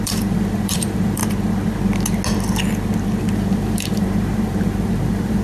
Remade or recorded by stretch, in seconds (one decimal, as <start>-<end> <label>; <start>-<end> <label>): 0.0-1.2 remade; 1.2-3.2 recorded; 3.2-5.4 remade